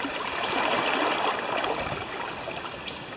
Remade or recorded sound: recorded